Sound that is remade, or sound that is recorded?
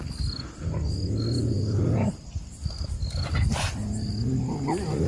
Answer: recorded